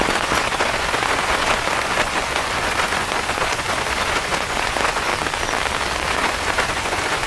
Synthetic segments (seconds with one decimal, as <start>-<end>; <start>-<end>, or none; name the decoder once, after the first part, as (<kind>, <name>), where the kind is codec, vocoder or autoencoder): 0.0-5.1 (vocoder, Vocos); 6.1-7.3